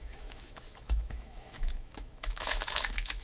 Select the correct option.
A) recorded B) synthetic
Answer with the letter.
B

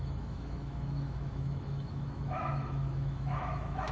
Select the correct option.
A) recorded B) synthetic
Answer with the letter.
B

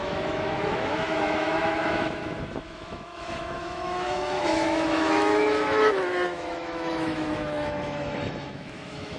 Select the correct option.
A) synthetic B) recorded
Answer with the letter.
A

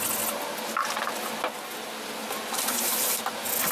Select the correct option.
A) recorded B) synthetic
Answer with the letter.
A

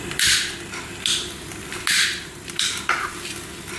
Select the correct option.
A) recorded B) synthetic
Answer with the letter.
A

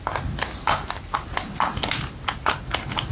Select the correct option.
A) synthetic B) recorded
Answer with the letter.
B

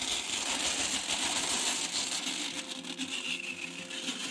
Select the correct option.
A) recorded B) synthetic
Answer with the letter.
A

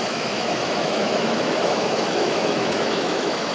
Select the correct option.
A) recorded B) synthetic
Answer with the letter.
B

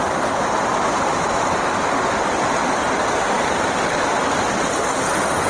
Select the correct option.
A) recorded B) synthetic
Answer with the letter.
A